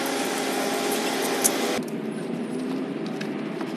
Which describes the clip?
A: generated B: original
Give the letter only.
B